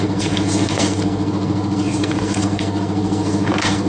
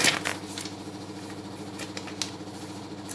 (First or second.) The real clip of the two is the second